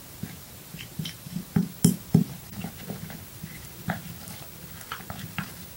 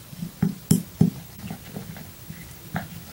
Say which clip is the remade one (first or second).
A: first